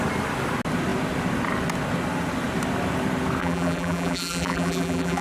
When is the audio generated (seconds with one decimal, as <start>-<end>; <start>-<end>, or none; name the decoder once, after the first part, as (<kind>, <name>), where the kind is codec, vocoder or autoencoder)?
3.4-5.2 (vocoder, BigVGAN v2)